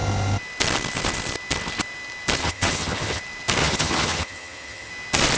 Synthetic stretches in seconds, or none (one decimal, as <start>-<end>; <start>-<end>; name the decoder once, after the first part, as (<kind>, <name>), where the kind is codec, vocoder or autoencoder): 2.4-3.2 (vocoder, HiFi-GAN); 3.6-4.9